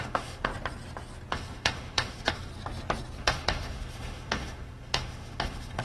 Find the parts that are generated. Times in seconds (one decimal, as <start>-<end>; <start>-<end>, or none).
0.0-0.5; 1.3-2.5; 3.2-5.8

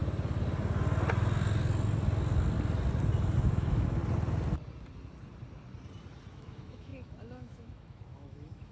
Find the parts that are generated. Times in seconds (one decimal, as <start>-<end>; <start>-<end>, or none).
3.5-4.0; 6.3-8.7

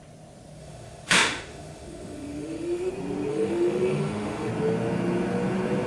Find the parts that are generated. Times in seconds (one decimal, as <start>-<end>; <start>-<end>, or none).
0.6-2.9; 3.3-4.5

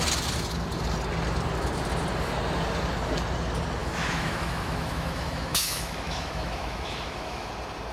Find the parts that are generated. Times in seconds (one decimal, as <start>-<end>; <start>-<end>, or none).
3.8-7.5

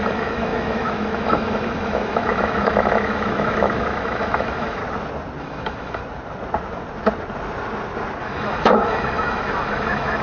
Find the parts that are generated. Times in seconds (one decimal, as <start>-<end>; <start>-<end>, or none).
0.0-4.8; 5.4-6.0; 8.2-10.2